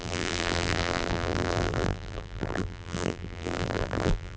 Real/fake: fake